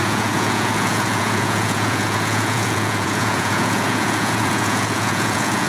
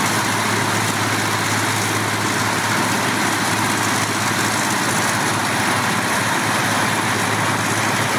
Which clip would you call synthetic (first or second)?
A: first